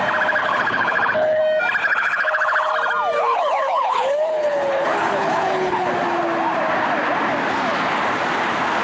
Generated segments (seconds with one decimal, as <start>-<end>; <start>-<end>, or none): 0.4-1.4; 1.8-2.7; 3.2-5.9